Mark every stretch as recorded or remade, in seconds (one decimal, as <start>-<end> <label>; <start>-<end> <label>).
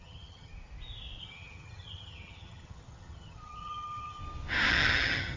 0.0-0.5 remade; 0.5-1.2 recorded; 1.2-4.2 remade; 4.2-4.7 recorded; 4.7-5.4 remade